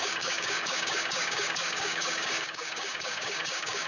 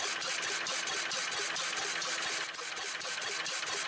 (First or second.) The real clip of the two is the second